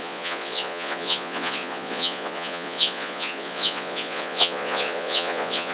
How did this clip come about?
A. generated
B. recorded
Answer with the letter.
A